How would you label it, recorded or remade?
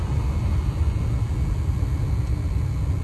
recorded